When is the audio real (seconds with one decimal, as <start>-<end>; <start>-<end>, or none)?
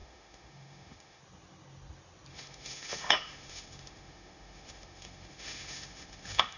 1.2-2.3